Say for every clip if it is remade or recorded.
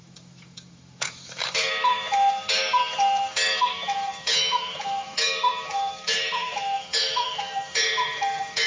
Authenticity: remade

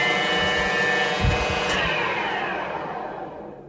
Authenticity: recorded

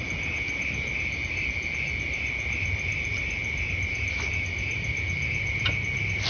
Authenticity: recorded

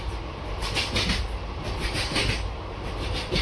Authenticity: recorded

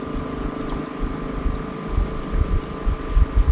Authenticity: recorded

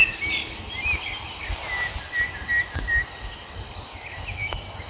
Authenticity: recorded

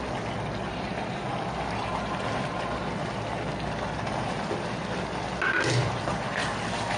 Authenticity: recorded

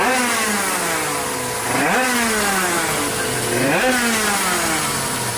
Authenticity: recorded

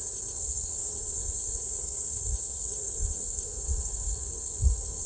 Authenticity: remade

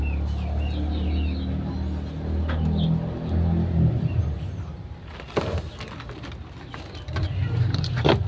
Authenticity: recorded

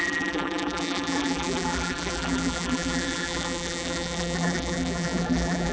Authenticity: remade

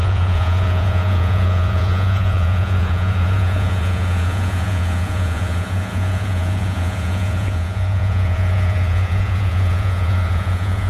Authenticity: remade